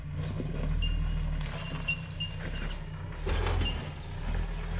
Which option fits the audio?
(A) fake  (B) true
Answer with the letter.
B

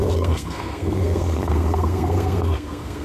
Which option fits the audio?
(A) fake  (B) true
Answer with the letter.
A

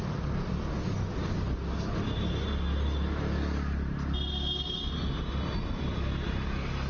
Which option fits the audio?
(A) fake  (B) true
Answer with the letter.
B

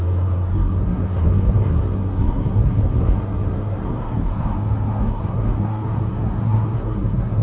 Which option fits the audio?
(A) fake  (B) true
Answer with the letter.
A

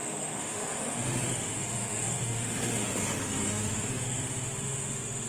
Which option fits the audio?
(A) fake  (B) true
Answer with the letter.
A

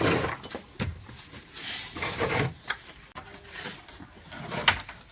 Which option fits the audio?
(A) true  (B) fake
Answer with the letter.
A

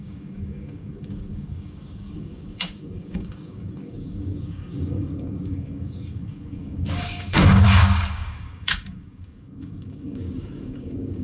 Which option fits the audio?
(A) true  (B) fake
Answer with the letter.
B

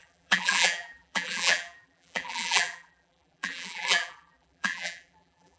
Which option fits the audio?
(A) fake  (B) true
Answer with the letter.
A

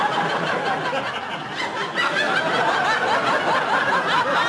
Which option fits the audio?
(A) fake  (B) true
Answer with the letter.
B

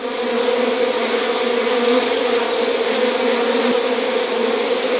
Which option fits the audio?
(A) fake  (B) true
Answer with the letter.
B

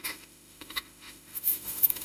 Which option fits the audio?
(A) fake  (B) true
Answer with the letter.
A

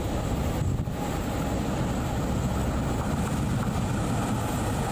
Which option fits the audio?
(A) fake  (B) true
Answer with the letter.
B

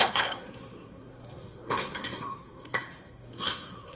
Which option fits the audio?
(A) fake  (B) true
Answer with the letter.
A